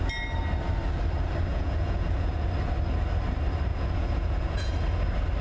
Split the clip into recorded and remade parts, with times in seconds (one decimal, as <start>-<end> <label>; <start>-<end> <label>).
0.0-1.5 recorded; 1.5-2.5 remade; 2.5-3.7 recorded; 3.7-4.7 remade; 4.7-5.4 recorded